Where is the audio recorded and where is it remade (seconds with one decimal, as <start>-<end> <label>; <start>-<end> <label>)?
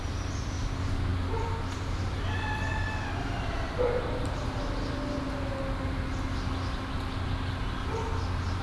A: 0.0-8.6 recorded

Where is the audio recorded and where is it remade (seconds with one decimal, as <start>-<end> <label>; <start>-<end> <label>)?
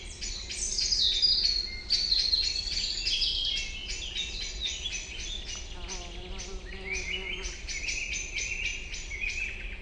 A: 0.0-9.8 recorded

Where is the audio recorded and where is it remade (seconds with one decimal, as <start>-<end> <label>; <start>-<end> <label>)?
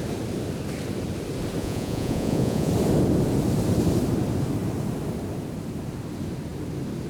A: 0.0-1.6 recorded; 1.6-2.7 remade; 2.7-7.1 recorded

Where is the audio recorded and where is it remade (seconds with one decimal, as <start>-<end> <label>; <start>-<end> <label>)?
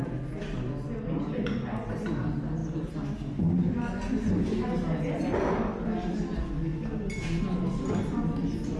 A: 0.0-8.8 recorded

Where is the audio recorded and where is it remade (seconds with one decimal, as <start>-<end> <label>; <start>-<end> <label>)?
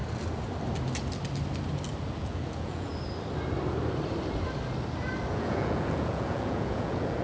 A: 0.0-2.2 recorded; 2.2-2.9 remade; 2.9-5.3 recorded; 5.3-7.2 remade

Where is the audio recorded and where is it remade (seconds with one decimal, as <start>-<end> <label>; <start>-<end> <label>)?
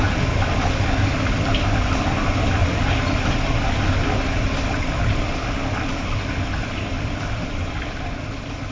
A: 0.0-8.7 recorded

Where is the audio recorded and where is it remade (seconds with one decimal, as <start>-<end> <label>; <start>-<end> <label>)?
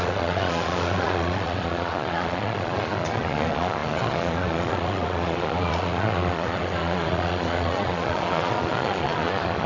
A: 0.0-9.7 remade